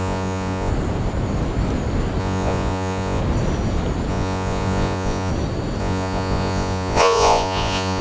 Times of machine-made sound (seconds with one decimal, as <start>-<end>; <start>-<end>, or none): 0.0-0.7; 2.2-3.2; 4.1-5.3; 5.8-8.0